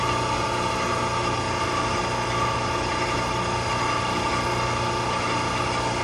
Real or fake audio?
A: real